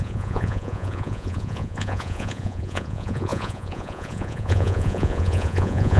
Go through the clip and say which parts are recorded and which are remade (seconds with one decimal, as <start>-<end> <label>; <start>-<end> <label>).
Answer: 0.0-6.0 remade